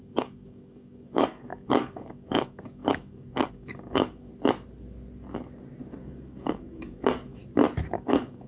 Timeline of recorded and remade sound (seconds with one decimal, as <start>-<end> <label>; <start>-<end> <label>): 0.0-4.3 remade; 4.3-6.0 recorded; 6.0-7.4 remade; 7.4-7.9 recorded; 7.9-8.5 remade